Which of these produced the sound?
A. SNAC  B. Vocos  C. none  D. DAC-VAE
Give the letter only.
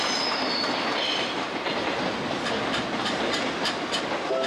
C